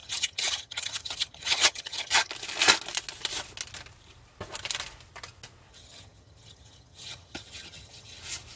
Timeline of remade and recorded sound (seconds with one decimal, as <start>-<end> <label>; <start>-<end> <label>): 0.0-2.3 remade; 2.3-5.7 recorded; 5.7-8.2 remade; 8.2-8.6 recorded